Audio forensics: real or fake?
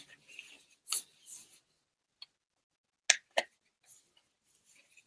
real